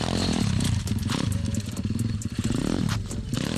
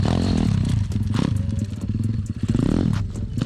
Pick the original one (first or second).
second